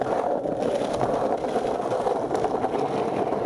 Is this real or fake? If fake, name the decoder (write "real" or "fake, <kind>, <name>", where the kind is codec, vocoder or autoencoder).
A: real